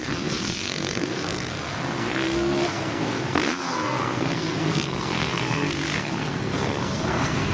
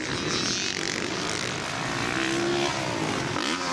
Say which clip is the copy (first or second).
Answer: first